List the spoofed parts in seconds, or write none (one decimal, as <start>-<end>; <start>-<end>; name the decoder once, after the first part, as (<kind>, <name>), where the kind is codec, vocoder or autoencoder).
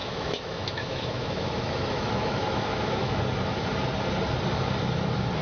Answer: 0.0-3.2 (autoencoder, DAC-VAE)